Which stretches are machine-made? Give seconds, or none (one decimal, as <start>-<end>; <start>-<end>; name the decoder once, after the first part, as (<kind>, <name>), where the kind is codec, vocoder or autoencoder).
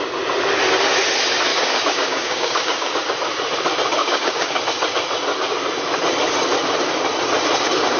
1.5-2.9 (codec, DAC); 4.0-4.6